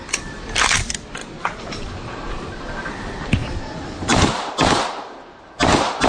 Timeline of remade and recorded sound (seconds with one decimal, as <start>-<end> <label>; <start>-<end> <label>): 0.0-1.2 recorded; 1.2-2.3 remade; 2.3-3.4 recorded; 3.4-4.3 remade; 4.3-6.1 recorded